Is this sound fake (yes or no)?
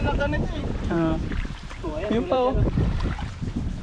yes